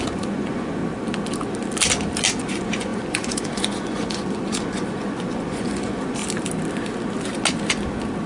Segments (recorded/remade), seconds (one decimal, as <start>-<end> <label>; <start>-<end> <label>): 0.0-0.8 remade; 0.8-2.4 recorded; 2.4-6.2 remade; 6.2-8.3 recorded